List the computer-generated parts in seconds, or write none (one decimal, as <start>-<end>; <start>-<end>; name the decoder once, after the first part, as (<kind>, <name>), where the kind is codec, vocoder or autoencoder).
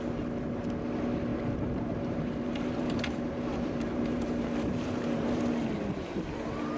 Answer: 1.3-5.4 (vocoder, BigVGAN v2)